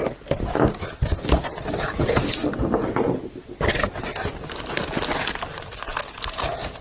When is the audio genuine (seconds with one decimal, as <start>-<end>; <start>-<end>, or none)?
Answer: 0.0-5.9